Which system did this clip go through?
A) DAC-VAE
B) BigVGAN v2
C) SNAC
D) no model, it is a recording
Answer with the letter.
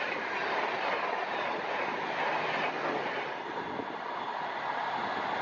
D